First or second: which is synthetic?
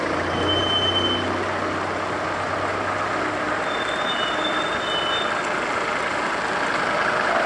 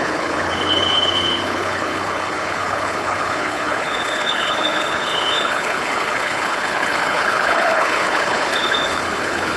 second